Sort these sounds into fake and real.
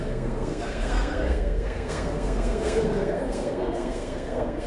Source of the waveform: fake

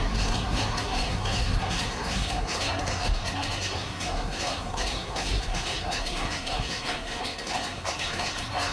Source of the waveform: fake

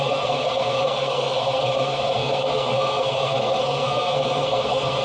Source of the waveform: fake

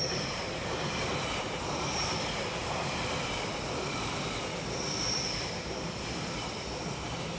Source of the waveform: real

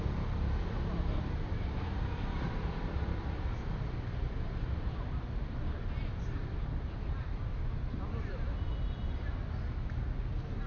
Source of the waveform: real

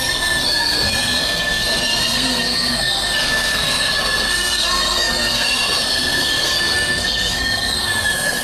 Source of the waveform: fake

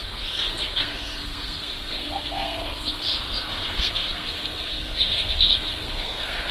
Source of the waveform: fake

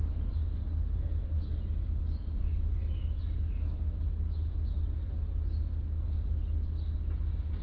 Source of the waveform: real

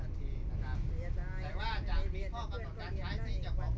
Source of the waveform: real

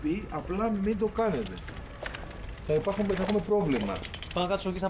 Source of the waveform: real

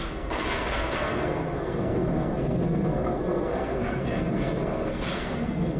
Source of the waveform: fake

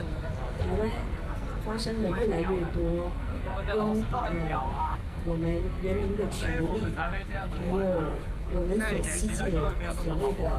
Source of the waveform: fake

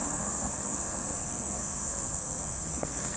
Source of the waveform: fake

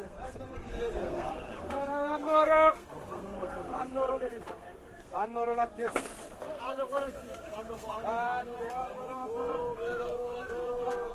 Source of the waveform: fake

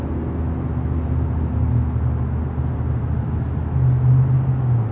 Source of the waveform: real